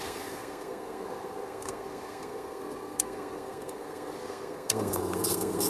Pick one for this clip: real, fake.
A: fake